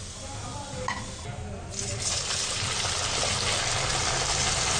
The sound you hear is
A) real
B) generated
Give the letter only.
A